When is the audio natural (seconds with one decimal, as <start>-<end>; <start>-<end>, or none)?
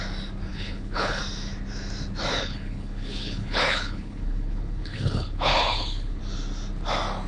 0.0-0.5; 1.2-2.3; 6.2-7.3